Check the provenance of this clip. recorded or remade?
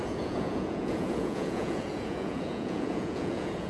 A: remade